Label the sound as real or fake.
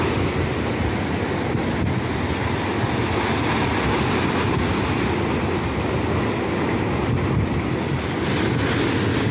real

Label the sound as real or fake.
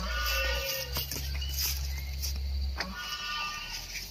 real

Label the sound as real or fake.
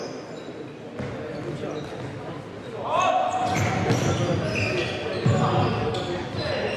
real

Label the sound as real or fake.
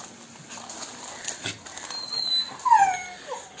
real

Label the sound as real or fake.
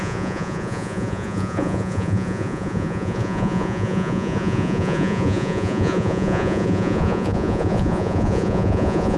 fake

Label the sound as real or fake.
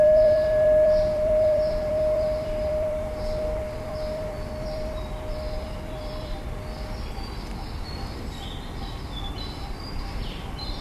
fake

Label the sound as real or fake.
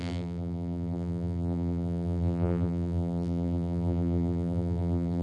fake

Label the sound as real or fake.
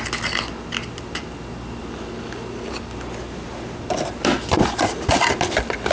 real